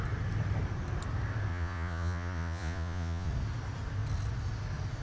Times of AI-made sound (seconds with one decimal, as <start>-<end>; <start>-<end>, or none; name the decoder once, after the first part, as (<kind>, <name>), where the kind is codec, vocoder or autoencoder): 1.5-3.3 (vocoder, Vocos)

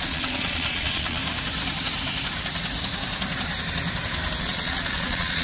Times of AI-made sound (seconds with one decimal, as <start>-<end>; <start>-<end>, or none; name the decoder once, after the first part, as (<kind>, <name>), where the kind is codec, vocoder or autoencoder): 0.0-1.2 (vocoder, Vocos); 4.4-5.4

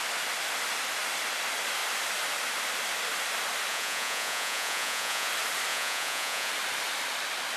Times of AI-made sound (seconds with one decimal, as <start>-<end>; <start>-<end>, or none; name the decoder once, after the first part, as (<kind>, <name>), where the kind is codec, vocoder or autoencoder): 3.7-5.3 (vocoder, Vocos); 5.7-6.5

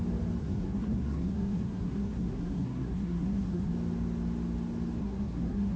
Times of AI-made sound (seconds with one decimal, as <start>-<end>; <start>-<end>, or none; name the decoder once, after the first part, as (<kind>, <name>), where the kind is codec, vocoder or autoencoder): 0.4-3.7 (codec, SNAC); 5.0-5.8

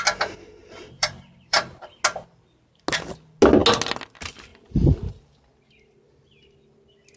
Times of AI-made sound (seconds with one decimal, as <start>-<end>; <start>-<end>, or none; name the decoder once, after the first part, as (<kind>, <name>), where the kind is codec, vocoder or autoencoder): 0.6-2.0 (vocoder, BigVGAN v2); 4.5-5.1